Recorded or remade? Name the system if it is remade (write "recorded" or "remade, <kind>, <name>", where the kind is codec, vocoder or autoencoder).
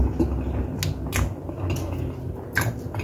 recorded